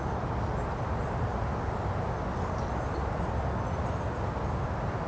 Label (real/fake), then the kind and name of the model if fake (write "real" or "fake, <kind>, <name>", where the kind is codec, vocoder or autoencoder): real